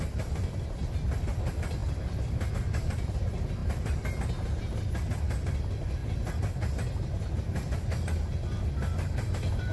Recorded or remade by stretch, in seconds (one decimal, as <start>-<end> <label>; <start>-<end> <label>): 0.0-9.7 recorded

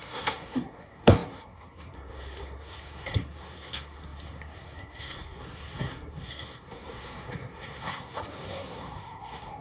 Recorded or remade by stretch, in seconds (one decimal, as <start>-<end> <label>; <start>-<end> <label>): 0.0-9.6 remade

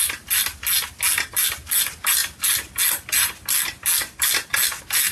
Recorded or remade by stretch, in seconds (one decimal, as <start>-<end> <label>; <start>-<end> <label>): 0.0-5.1 recorded

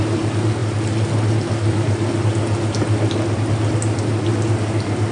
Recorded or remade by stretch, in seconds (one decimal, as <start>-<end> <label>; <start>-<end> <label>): 0.0-5.1 recorded